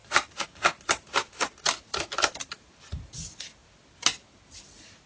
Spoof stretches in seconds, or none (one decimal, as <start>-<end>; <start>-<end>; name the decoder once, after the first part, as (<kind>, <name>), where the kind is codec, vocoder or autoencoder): 0.0-0.5 (vocoder, BigVGAN v2); 1.9-2.8

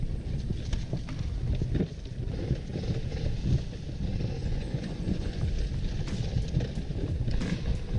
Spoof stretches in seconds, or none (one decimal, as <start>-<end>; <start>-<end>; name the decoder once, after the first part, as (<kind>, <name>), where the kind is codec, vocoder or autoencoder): 4.4-5.4 (vocoder, Vocos)

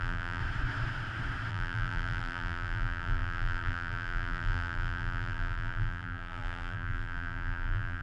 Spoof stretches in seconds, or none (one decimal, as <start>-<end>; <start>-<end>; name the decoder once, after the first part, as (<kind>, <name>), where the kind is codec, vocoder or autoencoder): 0.0-0.4 (vocoder, BigVGAN v2); 1.5-8.0